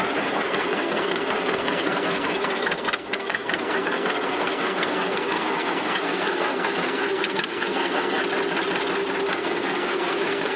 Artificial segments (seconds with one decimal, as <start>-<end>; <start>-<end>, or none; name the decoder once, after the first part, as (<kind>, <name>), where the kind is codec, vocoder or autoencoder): 0.0-8.2 (codec, SNAC); 9.3-10.6